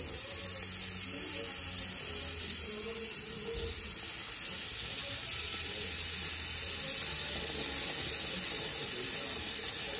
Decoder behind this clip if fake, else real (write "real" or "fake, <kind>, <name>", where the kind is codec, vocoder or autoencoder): real